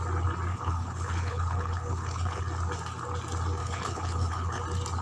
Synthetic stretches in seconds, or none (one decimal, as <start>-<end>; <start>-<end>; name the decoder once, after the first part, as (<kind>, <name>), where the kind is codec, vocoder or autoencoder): 0.5-2.4 (codec, HILCodec); 3.6-4.6